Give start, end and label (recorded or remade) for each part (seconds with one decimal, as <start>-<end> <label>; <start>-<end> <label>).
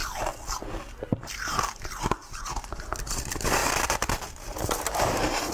0.0-1.0 recorded; 1.0-3.6 remade; 3.6-4.2 recorded; 4.2-5.5 remade